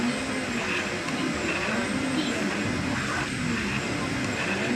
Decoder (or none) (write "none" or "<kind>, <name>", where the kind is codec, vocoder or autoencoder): none